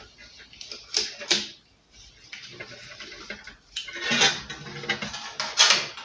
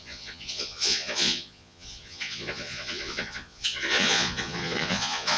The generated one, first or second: second